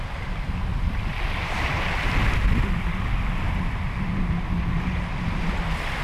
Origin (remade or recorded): recorded